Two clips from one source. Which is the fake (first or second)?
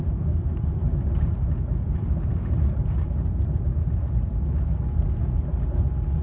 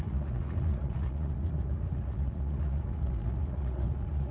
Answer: second